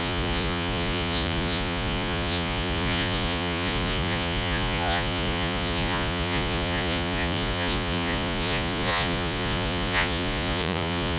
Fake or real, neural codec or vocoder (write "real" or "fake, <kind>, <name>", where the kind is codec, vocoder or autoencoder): fake, vocoder, Vocos